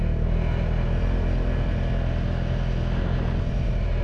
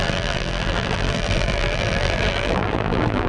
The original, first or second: first